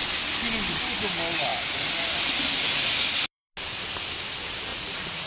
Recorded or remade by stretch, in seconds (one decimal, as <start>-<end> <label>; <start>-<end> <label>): 0.0-4.7 recorded; 4.7-5.3 remade